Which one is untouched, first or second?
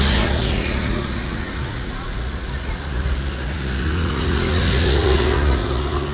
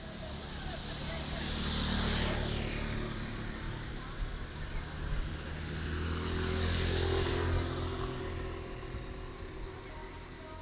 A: second